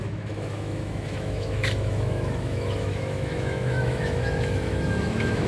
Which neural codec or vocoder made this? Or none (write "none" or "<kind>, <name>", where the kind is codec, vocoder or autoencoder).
autoencoder, DAC-VAE